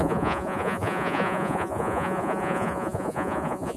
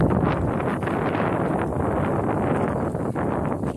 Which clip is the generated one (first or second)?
first